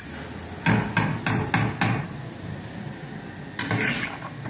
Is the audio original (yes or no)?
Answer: yes